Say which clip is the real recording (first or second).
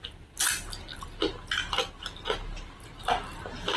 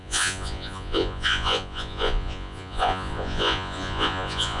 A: first